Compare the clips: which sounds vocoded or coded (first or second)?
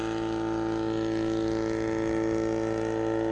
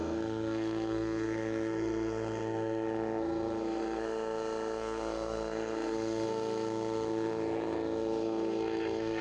second